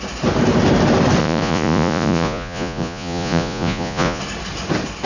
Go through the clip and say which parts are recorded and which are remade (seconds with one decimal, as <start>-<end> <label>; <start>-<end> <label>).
0.0-1.2 recorded; 1.2-4.2 remade; 4.2-5.1 recorded